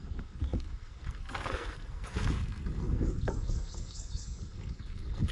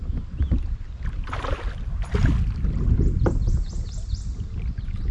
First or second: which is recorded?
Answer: second